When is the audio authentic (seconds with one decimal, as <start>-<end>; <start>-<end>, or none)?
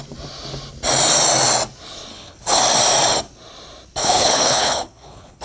0.0-2.1; 2.6-4.0